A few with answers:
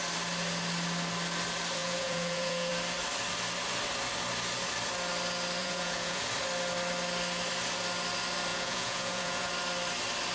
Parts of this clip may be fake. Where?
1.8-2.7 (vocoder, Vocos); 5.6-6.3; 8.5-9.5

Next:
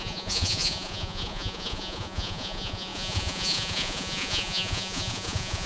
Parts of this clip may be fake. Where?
0.0-5.7 (vocoder, Vocos)